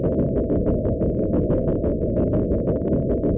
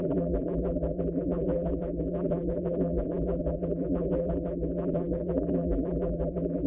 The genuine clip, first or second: first